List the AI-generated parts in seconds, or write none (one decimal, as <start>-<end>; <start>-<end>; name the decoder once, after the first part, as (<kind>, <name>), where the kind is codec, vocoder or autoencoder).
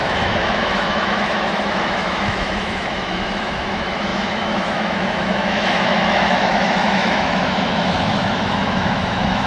0.0-9.5 (autoencoder, DAC-VAE)